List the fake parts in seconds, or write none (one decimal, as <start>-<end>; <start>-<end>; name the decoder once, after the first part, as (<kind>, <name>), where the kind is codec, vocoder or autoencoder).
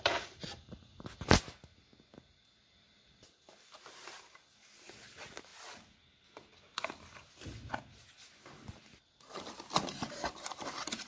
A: none